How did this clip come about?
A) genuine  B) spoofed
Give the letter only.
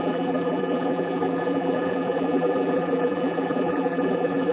B